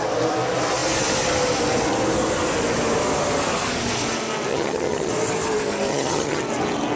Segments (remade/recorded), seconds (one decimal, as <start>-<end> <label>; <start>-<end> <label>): 0.0-4.5 recorded; 4.5-5.1 remade; 5.1-5.9 recorded; 5.9-6.4 remade; 6.4-7.0 recorded